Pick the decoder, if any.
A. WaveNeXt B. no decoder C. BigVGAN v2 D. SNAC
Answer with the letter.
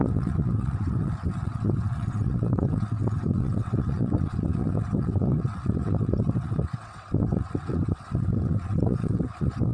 A